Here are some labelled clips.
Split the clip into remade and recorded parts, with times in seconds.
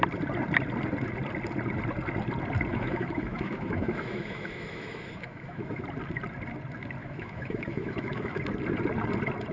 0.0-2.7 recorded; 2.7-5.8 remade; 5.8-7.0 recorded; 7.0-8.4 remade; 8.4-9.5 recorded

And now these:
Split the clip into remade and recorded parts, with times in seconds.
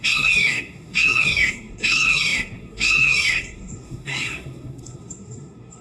0.0-5.8 remade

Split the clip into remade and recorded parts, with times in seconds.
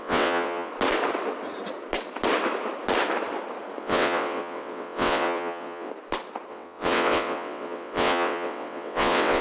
0.0-0.7 remade; 0.7-3.8 recorded; 3.8-5.9 remade; 5.9-6.5 recorded; 6.5-9.4 remade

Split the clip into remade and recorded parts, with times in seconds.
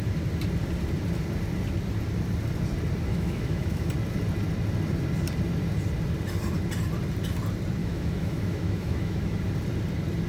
0.0-3.1 recorded; 3.1-3.9 remade; 3.9-7.8 recorded; 7.8-9.4 remade; 9.4-10.3 recorded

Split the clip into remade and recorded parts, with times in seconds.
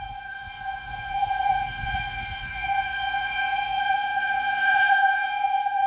0.0-5.9 remade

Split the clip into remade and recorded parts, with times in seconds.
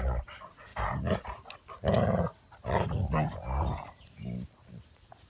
0.0-0.7 remade; 0.7-3.9 recorded; 3.9-5.3 remade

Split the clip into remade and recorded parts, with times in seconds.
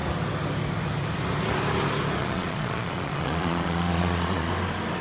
0.0-2.2 recorded; 2.2-4.5 remade; 4.5-5.0 recorded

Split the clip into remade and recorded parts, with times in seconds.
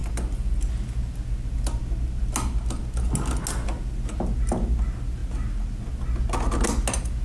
0.0-7.2 recorded